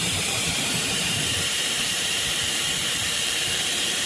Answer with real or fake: fake